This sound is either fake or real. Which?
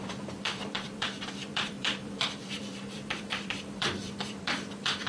fake